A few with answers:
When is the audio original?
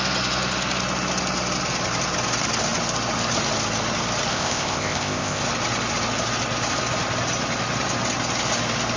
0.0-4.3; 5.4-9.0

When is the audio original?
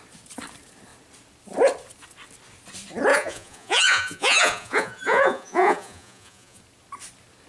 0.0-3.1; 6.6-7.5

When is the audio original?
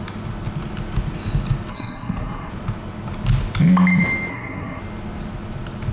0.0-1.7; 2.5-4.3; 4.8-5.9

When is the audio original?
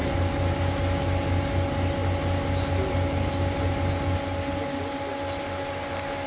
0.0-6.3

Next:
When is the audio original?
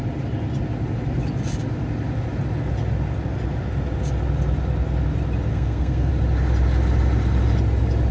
0.0-5.5; 6.1-8.1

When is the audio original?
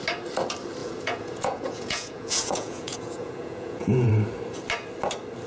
0.0-0.8; 4.1-5.5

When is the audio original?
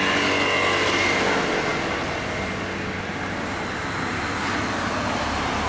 0.0-5.7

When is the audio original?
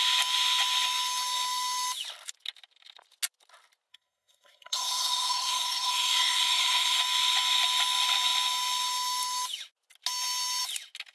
0.0-3.9; 7.0-11.1